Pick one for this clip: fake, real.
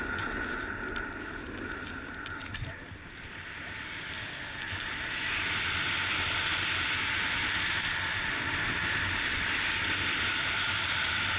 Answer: real